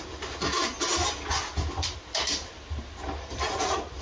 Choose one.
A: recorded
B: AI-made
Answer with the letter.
A